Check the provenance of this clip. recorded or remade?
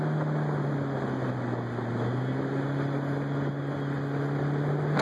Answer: recorded